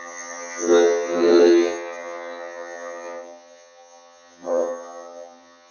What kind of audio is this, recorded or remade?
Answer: remade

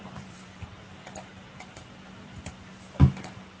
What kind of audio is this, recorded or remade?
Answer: remade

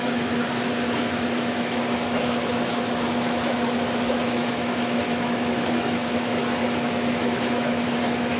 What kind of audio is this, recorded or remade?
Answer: remade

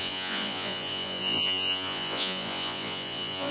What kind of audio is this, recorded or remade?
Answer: remade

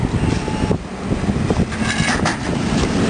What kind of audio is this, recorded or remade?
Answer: recorded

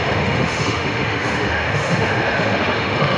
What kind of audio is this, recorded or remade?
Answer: remade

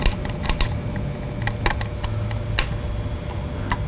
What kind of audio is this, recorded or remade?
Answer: recorded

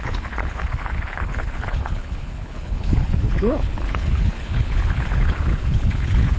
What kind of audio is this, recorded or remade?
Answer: remade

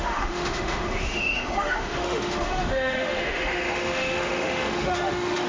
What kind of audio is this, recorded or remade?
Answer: remade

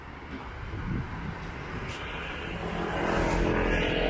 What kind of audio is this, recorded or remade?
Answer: recorded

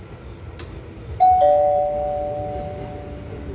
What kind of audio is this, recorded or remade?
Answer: recorded